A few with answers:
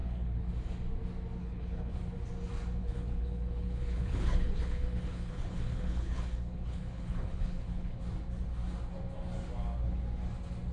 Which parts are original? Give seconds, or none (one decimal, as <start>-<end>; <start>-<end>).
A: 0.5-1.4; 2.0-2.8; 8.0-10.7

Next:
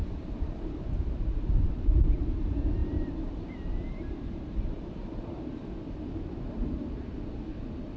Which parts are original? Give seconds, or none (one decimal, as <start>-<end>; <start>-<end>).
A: 2.0-2.8; 5.2-8.0

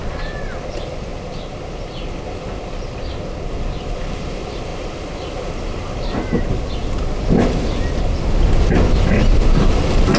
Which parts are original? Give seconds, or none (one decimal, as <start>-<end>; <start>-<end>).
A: 0.0-10.2